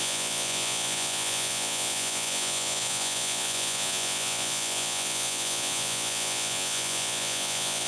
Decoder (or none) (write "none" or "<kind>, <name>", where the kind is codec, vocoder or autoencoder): vocoder, Vocos